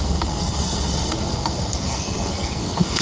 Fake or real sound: fake